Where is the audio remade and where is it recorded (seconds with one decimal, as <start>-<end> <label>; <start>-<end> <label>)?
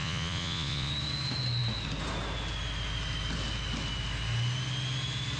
0.0-0.9 remade; 0.9-5.4 recorded